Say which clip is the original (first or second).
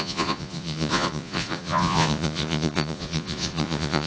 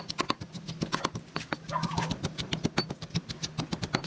second